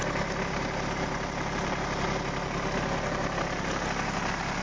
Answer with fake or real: real